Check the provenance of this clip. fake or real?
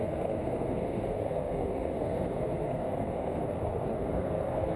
fake